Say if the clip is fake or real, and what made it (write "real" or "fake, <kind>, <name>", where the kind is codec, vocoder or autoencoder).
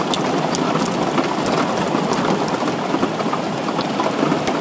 real